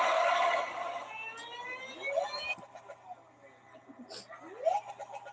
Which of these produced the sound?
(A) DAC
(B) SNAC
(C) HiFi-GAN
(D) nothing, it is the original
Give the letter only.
D